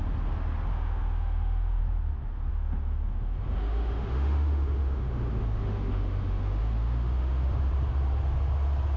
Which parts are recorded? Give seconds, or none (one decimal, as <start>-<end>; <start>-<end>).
0.0-0.7; 1.8-2.5; 7.6-9.0